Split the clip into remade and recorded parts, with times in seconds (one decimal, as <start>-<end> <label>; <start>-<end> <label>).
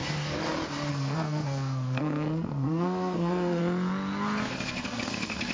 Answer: 0.0-0.9 recorded; 0.9-3.6 remade; 3.6-4.5 recorded; 4.5-5.5 remade